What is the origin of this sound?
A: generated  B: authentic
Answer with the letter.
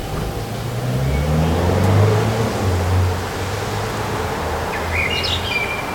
B